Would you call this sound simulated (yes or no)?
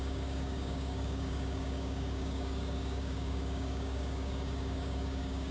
yes